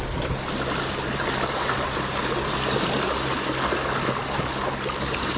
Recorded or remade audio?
recorded